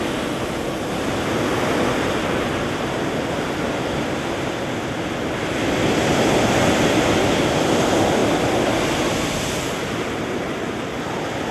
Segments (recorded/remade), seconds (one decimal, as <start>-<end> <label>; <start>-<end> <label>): 0.0-11.5 recorded